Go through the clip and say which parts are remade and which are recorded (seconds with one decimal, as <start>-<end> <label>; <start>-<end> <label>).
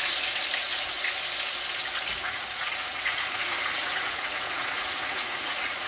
0.0-2.2 recorded; 2.2-5.9 remade